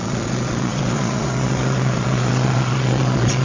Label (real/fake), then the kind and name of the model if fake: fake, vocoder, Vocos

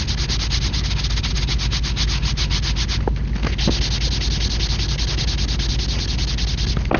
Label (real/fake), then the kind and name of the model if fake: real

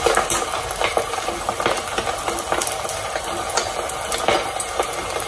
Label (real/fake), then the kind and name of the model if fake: real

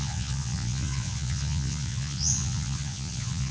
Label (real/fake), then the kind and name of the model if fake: fake, vocoder, Vocos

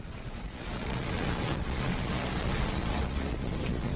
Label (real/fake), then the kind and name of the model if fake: fake, vocoder, Vocos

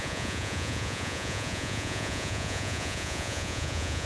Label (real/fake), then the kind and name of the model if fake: fake, vocoder, Vocos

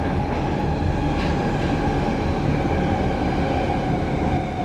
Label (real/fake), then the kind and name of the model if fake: real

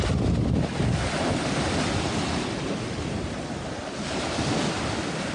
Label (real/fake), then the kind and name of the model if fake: real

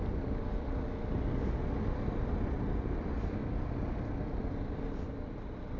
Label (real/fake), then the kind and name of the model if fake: real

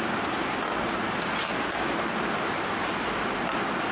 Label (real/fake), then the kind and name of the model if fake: real